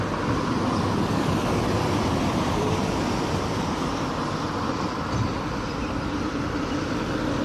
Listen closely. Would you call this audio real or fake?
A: fake